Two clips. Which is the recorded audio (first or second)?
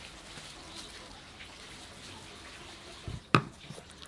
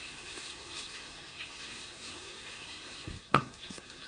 first